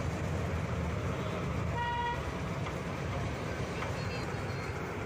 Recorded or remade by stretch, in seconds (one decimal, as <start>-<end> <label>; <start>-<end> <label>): 0.0-2.6 recorded; 2.6-4.1 remade; 4.1-5.1 recorded